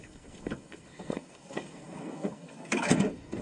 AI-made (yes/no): yes